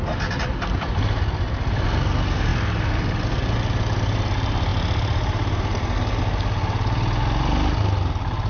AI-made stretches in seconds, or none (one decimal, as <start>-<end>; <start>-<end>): none